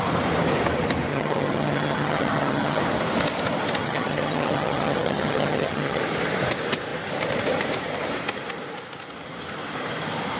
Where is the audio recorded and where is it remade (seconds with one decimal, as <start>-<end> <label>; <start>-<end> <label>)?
0.0-1.1 recorded; 1.1-2.8 remade; 2.8-3.8 recorded; 3.8-6.0 remade; 6.0-10.4 recorded